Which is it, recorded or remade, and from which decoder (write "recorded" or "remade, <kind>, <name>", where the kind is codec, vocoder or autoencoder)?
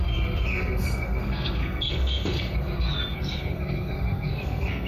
remade, codec, SNAC